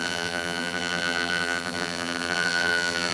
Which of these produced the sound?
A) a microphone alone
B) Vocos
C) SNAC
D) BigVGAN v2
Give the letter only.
D